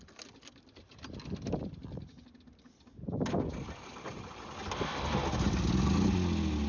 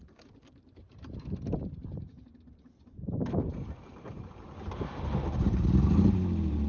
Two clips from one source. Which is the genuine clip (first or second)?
first